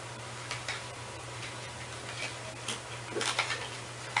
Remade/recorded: recorded